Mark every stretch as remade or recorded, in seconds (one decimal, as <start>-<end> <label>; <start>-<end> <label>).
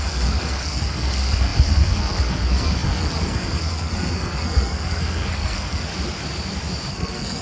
0.0-5.9 remade; 5.9-6.9 recorded; 6.9-7.4 remade